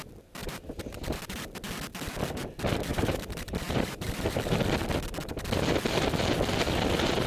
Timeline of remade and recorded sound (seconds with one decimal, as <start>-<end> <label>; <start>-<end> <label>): 0.0-0.4 recorded; 0.4-1.2 remade; 1.2-2.9 recorded; 2.9-4.6 remade; 4.6-7.3 recorded